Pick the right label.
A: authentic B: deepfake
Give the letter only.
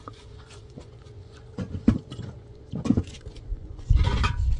B